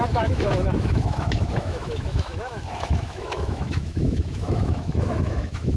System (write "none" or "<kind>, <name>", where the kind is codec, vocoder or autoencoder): autoencoder, DAC-VAE